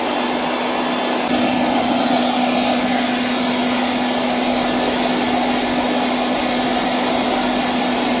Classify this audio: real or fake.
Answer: real